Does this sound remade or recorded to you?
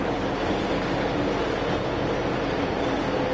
recorded